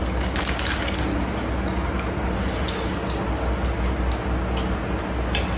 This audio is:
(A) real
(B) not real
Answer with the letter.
A